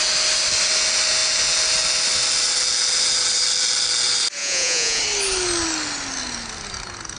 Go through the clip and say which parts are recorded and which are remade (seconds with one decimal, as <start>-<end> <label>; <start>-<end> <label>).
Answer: 0.0-4.4 recorded; 4.4-5.0 remade; 5.0-7.2 recorded